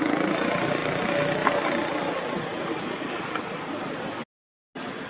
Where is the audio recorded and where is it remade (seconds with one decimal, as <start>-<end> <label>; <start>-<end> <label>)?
0.0-5.1 recorded